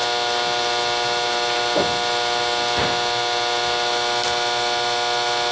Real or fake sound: real